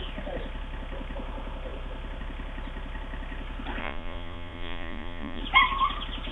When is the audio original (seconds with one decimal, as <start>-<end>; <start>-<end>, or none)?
0.0-3.8; 5.4-6.3